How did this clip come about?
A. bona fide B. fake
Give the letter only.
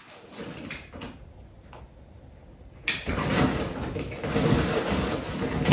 A